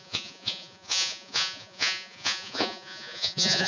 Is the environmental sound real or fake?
fake